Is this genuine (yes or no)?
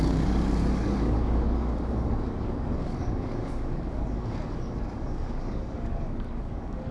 no